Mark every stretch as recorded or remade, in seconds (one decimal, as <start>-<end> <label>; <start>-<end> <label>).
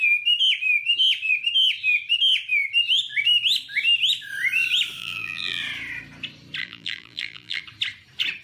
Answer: 0.0-5.0 recorded; 5.0-5.6 remade; 5.6-6.6 recorded; 6.6-7.6 remade; 7.6-8.4 recorded